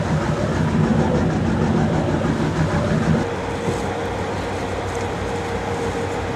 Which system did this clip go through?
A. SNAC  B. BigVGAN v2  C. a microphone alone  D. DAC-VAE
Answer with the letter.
C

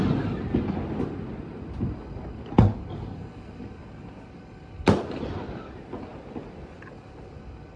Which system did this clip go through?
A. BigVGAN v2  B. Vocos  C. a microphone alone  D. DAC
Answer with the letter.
C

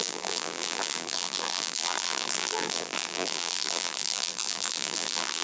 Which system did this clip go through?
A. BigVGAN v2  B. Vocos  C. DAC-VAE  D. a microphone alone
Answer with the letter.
A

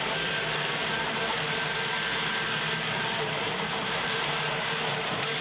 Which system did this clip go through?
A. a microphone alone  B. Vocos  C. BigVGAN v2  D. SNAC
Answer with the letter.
A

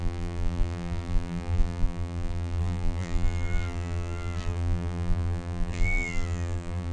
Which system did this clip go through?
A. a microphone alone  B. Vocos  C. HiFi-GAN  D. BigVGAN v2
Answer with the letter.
D